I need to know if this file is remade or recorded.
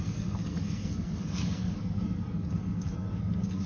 remade